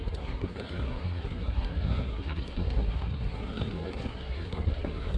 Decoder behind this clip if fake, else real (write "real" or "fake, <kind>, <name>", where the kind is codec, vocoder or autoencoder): fake, codec, SNAC